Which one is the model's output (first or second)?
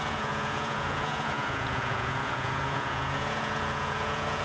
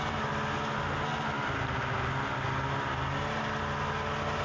first